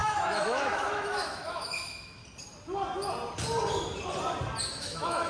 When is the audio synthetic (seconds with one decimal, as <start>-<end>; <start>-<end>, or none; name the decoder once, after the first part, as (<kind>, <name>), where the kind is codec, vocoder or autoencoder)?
0.0-2.2 (autoencoder, DAC-VAE); 4.7-5.3